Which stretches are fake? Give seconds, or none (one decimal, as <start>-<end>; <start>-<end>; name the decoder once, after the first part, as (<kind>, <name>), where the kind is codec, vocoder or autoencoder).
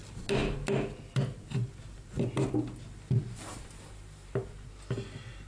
3.2-4.7 (vocoder, BigVGAN v2)